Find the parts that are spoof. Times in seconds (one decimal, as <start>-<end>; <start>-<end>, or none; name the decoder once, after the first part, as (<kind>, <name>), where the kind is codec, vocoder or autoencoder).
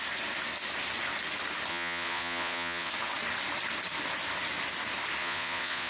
1.7-2.9 (vocoder, Vocos); 5.2-5.9